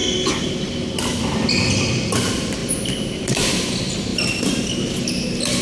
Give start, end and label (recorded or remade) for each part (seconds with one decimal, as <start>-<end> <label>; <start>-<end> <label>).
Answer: 0.0-5.6 recorded